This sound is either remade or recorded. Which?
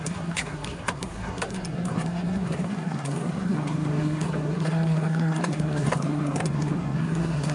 remade